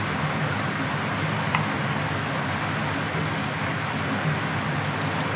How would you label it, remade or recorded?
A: recorded